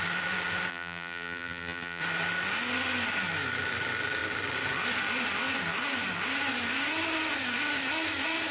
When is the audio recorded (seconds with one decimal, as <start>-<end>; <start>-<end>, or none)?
0.0-0.7; 2.0-8.5